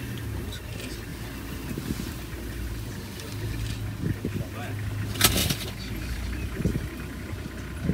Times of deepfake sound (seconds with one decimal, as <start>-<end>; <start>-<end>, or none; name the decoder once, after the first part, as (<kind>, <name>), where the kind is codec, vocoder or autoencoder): 5.4-7.9 (vocoder, BigVGAN v2)